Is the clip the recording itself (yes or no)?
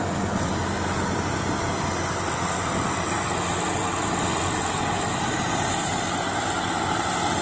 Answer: yes